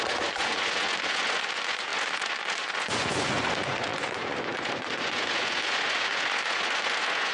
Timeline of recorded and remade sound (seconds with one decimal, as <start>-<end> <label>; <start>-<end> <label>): 0.0-7.3 remade